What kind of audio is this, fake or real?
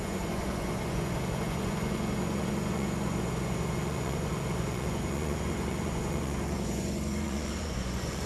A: fake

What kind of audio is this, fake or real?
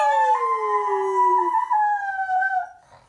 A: real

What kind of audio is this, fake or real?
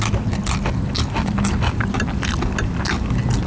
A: real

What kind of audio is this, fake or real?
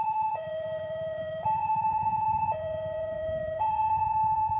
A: fake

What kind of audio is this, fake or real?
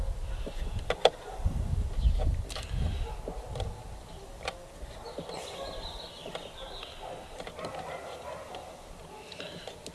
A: real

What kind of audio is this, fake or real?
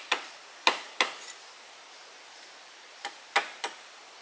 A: real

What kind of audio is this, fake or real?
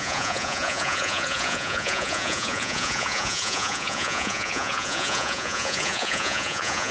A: fake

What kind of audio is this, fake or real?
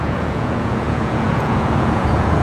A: fake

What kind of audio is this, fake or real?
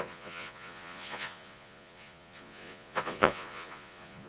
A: fake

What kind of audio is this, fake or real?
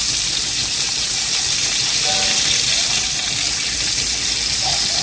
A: real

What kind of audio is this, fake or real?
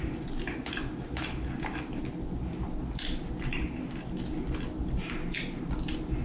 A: real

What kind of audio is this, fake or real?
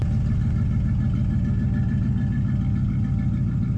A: real